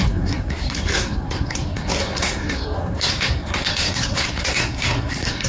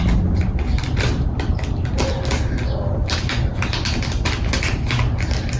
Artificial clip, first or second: first